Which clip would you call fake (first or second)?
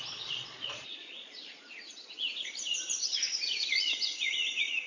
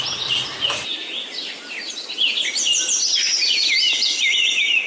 first